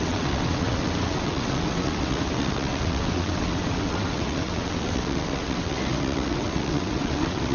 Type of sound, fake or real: fake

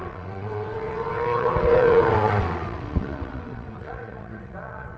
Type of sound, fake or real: fake